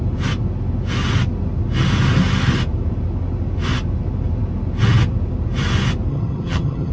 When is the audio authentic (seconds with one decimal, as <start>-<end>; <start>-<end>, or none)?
0.0-6.1